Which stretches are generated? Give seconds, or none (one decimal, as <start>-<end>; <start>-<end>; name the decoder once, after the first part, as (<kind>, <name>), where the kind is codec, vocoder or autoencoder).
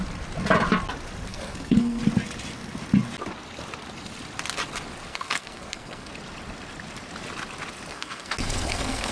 1.3-2.0 (codec, SNAC); 5.1-6.1; 7.9-9.1